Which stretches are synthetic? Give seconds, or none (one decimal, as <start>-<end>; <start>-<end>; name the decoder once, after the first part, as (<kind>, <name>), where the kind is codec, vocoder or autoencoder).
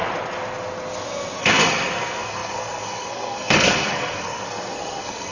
1.4-5.3 (codec, SNAC)